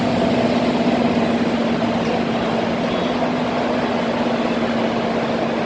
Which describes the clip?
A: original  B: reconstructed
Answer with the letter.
A